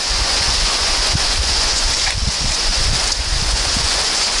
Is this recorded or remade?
remade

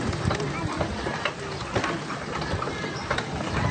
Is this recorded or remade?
recorded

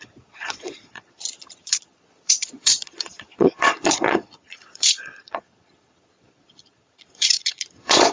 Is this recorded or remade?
remade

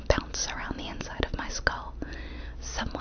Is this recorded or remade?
recorded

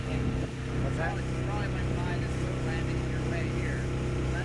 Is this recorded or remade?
recorded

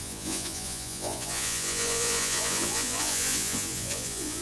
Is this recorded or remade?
remade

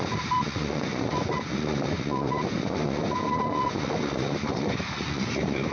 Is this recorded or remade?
remade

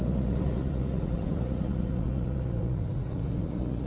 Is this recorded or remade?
remade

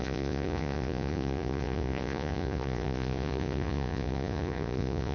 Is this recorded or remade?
remade